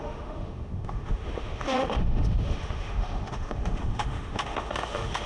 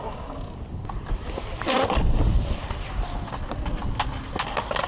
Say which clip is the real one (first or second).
second